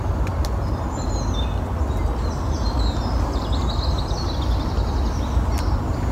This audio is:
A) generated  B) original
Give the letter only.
B